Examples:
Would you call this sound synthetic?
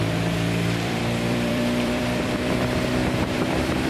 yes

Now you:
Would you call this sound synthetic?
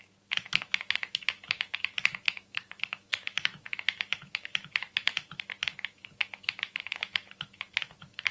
yes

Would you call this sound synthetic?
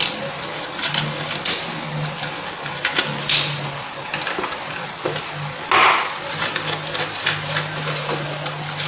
no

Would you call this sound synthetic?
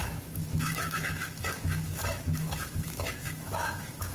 yes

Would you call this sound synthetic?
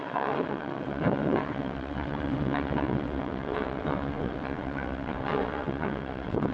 yes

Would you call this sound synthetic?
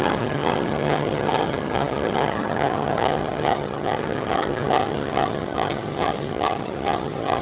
yes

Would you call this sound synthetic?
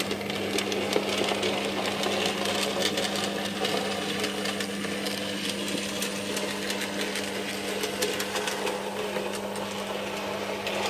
no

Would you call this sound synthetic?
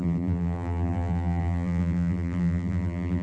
yes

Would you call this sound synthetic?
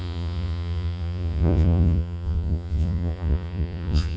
yes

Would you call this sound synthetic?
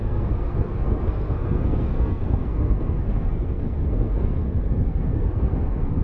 yes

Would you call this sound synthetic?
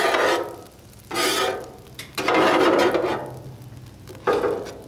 no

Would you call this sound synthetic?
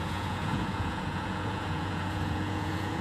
yes